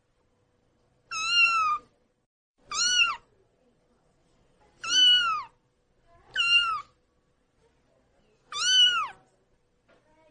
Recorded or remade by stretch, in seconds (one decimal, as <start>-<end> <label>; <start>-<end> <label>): 0.0-2.4 recorded; 2.4-3.1 remade; 3.1-4.2 recorded; 4.2-5.0 remade; 5.0-10.3 recorded